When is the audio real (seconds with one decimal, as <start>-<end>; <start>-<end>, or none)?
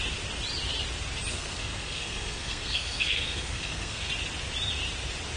0.0-1.3; 4.1-5.4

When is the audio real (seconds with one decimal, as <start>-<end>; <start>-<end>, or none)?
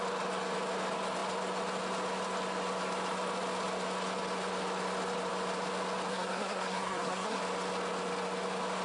0.0-6.1; 7.4-8.8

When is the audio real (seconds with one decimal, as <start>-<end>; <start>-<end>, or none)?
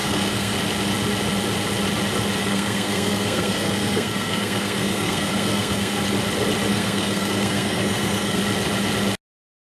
0.6-2.4; 6.0-6.7; 8.4-9.8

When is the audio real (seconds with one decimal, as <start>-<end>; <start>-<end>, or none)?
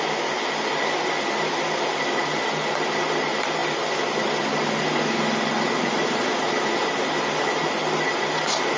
0.0-8.8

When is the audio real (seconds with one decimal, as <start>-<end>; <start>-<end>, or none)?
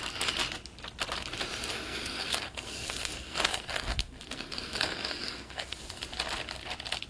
0.0-1.7; 6.0-7.1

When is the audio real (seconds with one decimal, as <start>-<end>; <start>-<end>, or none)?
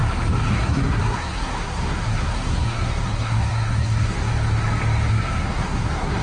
0.0-0.5; 4.3-5.1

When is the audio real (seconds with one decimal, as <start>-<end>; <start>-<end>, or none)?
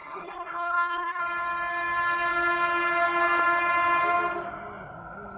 1.2-5.4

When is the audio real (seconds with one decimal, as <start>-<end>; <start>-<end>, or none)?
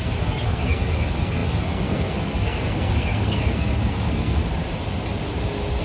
4.4-5.8